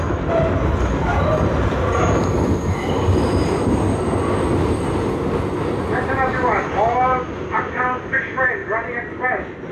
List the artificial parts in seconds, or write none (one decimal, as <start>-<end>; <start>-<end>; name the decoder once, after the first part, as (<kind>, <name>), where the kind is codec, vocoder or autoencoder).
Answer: none